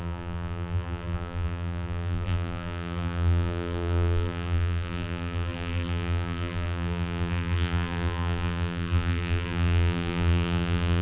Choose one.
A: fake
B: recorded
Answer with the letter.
A